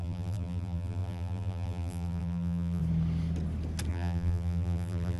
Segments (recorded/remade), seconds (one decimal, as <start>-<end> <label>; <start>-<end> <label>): 0.0-2.8 remade; 2.8-3.9 recorded; 3.9-5.2 remade